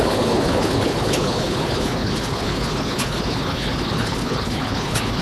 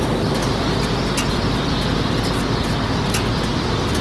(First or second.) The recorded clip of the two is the second